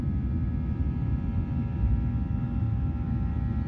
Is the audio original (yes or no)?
yes